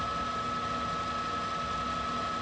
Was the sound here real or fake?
real